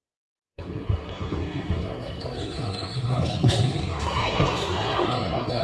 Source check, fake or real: fake